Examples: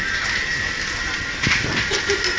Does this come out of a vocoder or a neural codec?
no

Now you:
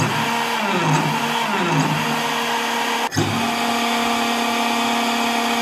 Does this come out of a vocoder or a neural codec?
no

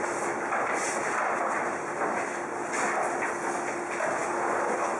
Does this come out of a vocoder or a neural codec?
no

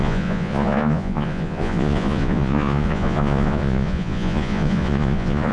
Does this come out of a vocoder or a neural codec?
yes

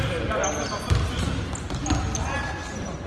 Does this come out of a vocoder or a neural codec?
no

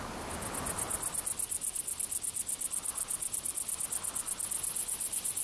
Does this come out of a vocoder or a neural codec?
no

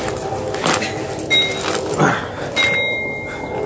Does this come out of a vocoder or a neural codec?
no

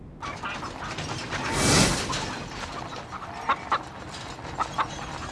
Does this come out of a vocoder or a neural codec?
no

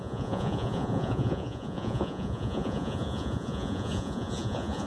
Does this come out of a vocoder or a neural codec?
yes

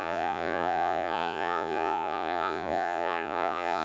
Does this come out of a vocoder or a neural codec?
yes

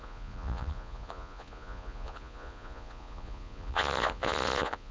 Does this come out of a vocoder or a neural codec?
yes